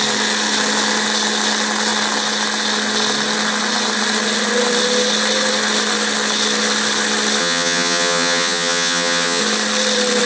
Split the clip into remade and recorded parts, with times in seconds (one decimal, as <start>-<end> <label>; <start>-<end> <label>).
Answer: 0.0-7.4 recorded; 7.4-9.4 remade; 9.4-10.3 recorded